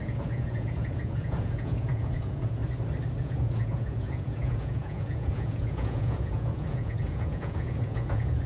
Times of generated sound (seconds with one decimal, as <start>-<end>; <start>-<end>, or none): 0.0-2.6; 3.2-8.5